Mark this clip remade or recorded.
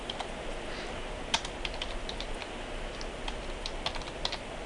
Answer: recorded